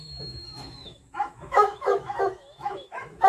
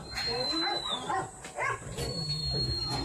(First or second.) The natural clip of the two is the second